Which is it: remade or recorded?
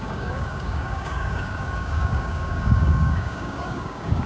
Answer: remade